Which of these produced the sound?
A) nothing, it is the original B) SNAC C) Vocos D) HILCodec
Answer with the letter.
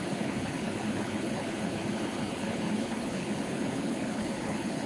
D